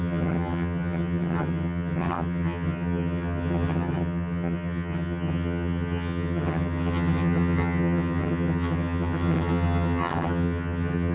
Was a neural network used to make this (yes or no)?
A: yes